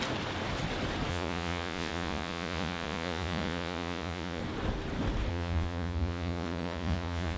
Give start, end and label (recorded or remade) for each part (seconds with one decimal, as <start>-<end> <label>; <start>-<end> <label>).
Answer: 0.0-1.1 recorded; 1.1-4.4 remade; 4.4-5.3 recorded; 5.3-7.4 remade